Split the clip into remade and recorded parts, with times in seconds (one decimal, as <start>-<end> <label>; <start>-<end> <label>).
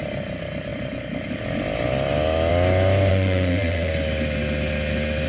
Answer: 0.0-3.1 recorded; 3.1-3.9 remade; 3.9-5.3 recorded